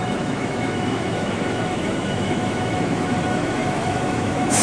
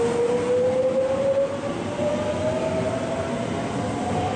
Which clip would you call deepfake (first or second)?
first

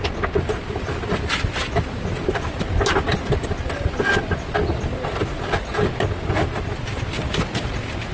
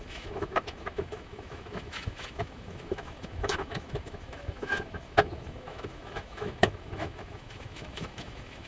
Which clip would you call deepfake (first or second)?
second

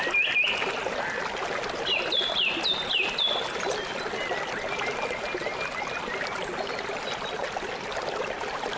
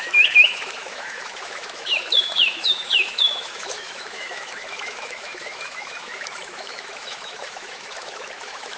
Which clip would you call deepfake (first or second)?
second